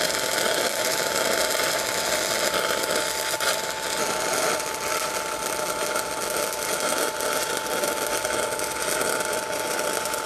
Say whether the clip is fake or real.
real